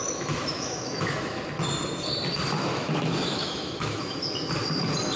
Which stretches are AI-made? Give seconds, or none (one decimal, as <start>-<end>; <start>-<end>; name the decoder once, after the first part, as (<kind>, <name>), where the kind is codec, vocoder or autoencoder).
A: 0.0-1.4 (autoencoder, DAC-VAE); 2.7-4.2